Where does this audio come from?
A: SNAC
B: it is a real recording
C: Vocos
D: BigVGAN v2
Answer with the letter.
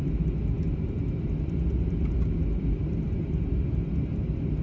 B